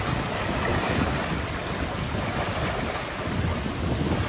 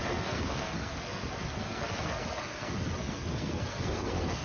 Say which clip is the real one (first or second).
first